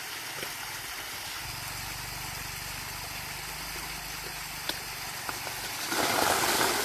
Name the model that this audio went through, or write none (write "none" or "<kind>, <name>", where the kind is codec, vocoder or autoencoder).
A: none